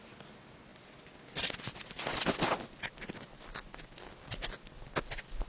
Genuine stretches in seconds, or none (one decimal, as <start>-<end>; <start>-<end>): 0.0-5.5